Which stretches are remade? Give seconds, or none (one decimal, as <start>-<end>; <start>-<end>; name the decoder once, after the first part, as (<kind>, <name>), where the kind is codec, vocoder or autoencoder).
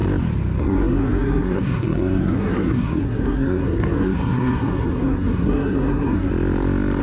0.6-6.3 (codec, SNAC)